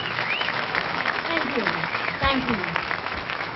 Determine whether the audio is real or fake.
fake